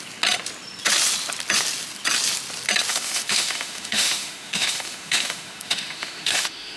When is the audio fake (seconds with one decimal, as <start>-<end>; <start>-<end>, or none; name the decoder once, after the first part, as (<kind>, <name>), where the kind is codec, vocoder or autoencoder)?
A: 2.9-6.8 (autoencoder, DAC-VAE)